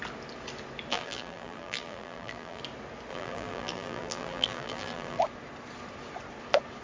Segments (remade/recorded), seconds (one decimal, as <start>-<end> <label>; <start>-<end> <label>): 0.0-0.9 recorded; 0.9-2.6 remade; 2.6-3.1 recorded; 3.1-5.2 remade; 5.2-6.8 recorded